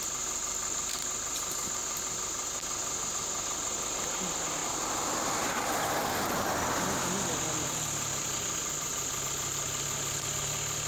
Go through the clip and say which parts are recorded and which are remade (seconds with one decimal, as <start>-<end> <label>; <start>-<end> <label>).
0.0-10.9 recorded